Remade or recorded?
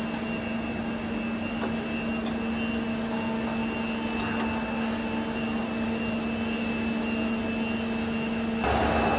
recorded